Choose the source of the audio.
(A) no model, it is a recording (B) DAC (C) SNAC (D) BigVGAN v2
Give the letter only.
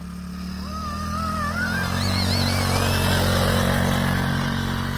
A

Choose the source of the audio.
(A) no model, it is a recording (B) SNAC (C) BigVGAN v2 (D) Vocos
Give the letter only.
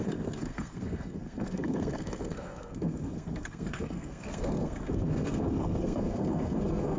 B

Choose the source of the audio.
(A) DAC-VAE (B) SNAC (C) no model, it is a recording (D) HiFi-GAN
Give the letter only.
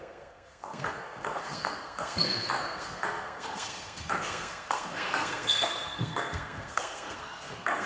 B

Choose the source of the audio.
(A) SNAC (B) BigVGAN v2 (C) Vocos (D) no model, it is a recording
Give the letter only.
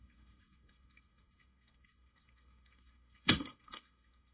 A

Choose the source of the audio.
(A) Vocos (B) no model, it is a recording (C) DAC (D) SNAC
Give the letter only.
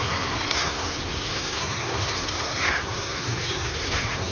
D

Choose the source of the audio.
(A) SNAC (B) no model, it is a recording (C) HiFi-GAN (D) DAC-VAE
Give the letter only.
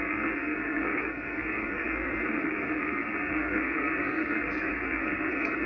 A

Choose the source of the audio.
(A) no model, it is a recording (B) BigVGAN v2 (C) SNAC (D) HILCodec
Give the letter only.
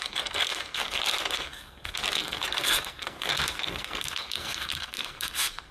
C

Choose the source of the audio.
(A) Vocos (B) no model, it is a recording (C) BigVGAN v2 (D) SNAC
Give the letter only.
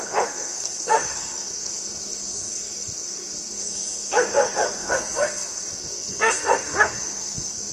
D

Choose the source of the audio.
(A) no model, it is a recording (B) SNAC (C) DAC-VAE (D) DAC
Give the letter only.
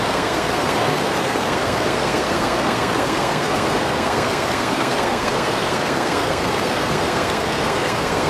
B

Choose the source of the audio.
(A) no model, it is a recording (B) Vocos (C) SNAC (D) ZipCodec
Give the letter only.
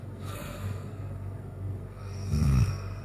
C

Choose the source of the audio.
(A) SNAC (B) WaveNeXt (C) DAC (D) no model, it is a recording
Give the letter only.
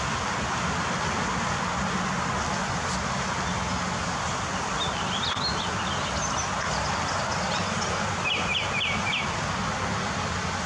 D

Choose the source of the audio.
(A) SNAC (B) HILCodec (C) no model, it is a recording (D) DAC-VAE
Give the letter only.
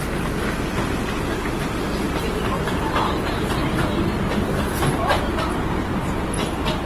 C